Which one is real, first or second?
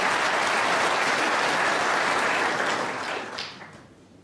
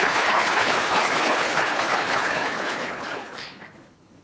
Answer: first